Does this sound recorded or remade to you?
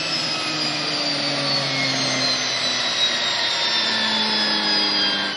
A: recorded